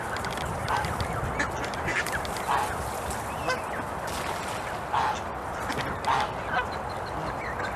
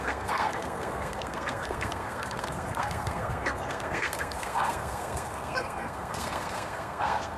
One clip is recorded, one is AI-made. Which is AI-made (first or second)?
second